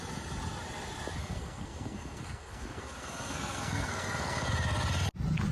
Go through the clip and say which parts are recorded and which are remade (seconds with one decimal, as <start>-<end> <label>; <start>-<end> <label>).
0.0-1.2 recorded; 1.2-4.5 remade; 4.5-5.5 recorded